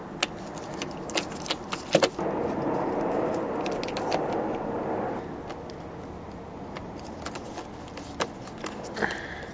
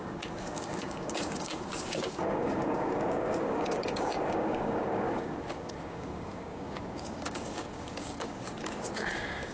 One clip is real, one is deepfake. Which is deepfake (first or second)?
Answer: second